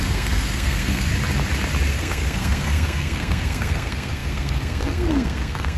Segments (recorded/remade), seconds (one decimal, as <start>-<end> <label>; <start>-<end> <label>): 0.0-1.1 remade; 1.1-1.9 recorded; 1.9-5.8 remade